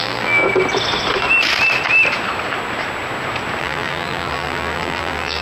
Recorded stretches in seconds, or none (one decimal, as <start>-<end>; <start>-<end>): 0.4-3.6

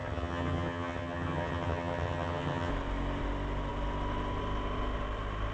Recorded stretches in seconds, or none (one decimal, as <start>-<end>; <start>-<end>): 2.7-5.5

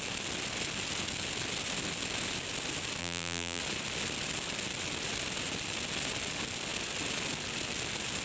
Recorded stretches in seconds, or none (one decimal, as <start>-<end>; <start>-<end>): 0.0-3.0; 3.6-8.2

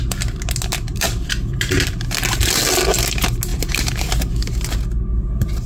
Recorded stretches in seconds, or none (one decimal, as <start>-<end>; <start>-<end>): 0.0-0.9; 1.6-5.7

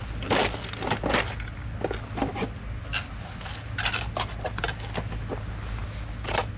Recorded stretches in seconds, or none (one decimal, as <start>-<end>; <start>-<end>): 0.0-6.6

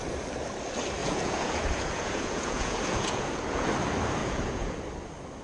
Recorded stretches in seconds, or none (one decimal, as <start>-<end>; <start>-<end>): 0.0-1.0; 3.7-4.2; 4.8-5.4

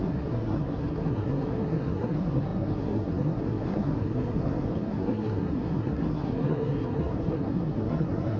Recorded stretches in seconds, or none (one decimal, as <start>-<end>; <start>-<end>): none

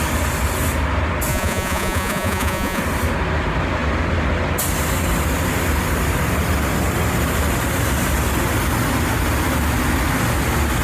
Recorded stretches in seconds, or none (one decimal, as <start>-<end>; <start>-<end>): 0.0-1.3; 2.8-10.8